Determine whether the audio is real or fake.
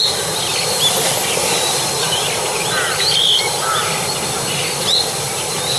real